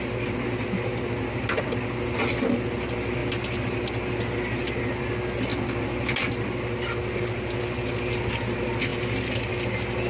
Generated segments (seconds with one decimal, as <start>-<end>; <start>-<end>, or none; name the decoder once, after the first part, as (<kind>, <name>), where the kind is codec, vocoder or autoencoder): none